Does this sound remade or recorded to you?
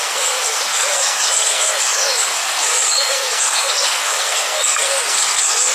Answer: remade